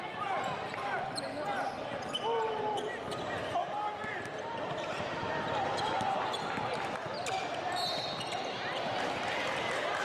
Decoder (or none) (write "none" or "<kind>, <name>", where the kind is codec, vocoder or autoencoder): vocoder, BigVGAN v2